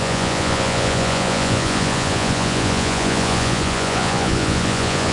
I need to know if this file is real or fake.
fake